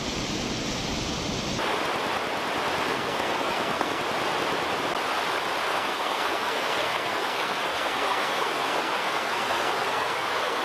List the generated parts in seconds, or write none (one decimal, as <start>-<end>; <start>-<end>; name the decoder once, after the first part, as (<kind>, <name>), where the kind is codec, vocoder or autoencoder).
2.9-4.0 (codec, SNAC); 5.6-10.6